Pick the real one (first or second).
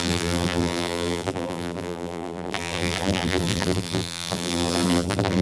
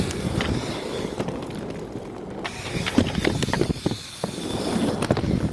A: second